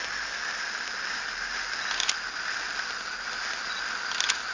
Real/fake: real